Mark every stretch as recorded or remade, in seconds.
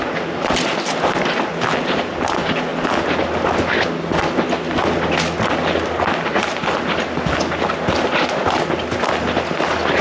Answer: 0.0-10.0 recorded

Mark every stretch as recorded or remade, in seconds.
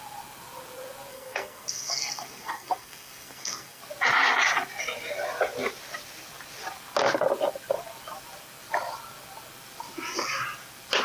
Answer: 0.0-1.1 recorded; 1.1-3.8 remade; 3.8-11.0 recorded